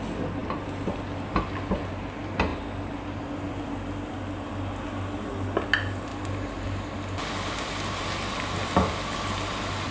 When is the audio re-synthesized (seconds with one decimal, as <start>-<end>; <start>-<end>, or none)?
0.4-1.9; 2.5-3.2; 6.1-8.0